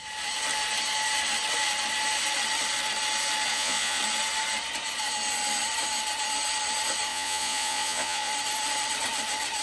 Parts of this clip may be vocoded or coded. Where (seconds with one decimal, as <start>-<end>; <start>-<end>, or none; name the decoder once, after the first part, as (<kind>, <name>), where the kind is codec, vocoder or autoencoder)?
3.5-4.0 (vocoder, Vocos); 7.1-8.3